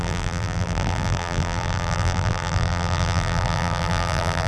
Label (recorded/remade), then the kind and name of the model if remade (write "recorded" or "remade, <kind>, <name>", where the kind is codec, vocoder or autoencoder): remade, vocoder, BigVGAN v2